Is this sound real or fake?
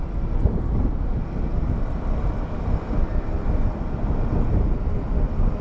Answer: real